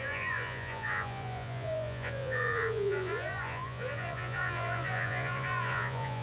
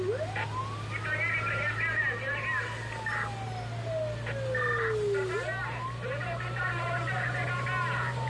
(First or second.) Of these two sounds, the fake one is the first